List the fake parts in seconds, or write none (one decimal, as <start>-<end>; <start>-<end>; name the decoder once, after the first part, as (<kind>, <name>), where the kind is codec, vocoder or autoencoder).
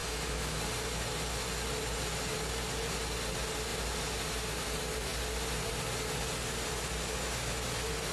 0.0-0.6 (autoencoder, DAC-VAE)